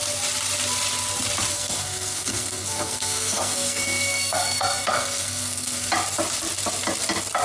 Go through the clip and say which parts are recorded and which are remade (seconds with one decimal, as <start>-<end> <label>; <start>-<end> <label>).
0.0-1.5 recorded; 1.5-5.9 remade; 5.9-7.4 recorded